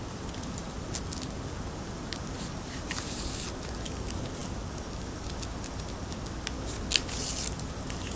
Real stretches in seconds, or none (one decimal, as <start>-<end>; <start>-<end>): 0.0-8.2